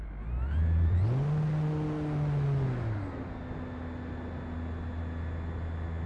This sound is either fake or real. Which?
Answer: real